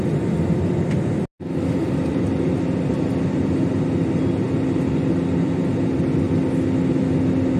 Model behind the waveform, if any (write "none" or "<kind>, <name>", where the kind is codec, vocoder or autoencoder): none